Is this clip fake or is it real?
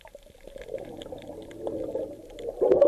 real